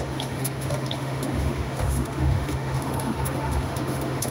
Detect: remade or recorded remade